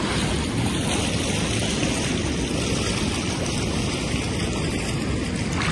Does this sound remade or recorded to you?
recorded